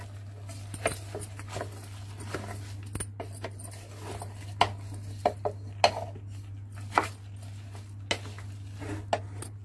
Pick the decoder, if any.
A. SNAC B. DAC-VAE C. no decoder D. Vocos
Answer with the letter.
C